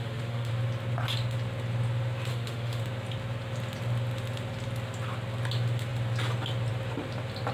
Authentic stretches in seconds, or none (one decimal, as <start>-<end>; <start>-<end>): 0.5-2.3; 2.8-7.5